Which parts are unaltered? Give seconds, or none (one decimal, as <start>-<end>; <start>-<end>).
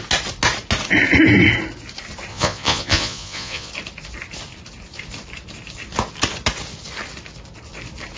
0.0-2.3; 3.7-8.2